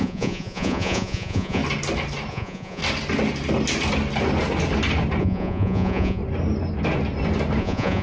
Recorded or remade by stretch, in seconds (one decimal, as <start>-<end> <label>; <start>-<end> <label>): 0.0-1.6 remade; 1.6-2.3 recorded; 2.3-2.8 remade; 2.8-5.2 recorded; 5.2-6.2 remade; 6.2-7.6 recorded; 7.6-8.0 remade